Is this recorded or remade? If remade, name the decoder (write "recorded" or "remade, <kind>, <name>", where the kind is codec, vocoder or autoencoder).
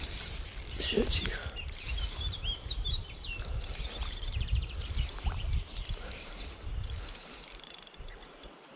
remade, vocoder, BigVGAN v2